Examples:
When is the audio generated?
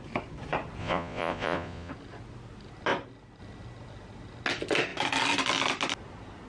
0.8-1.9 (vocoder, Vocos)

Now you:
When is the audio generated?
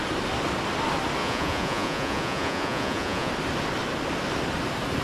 1.2-3.3 (vocoder, Vocos)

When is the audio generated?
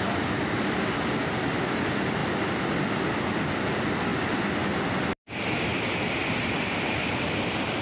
none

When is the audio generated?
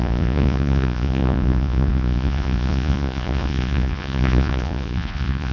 0.0-5.5 (vocoder, Vocos)